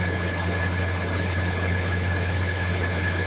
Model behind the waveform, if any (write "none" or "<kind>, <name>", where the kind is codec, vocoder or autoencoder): codec, HILCodec